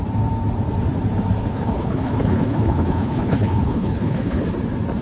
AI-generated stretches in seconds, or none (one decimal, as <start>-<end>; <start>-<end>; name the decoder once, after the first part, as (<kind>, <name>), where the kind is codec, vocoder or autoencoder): 1.4-4.4 (codec, HILCodec)